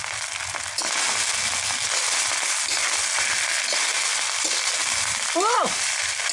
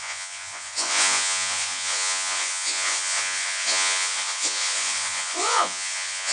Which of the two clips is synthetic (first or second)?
second